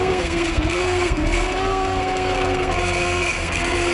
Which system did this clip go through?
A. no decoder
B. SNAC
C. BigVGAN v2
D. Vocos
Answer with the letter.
B